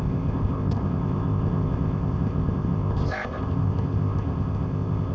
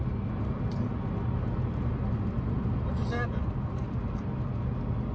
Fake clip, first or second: first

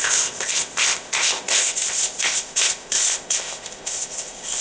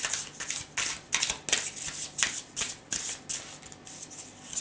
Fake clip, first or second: first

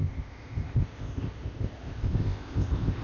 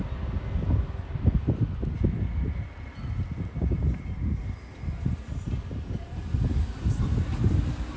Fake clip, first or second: first